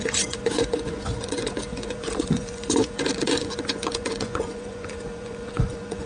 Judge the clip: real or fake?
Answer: fake